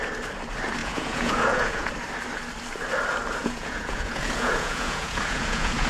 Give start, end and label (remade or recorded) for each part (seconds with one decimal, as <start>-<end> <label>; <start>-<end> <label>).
0.0-0.8 recorded; 0.8-1.9 remade; 1.9-3.4 recorded; 3.4-5.9 remade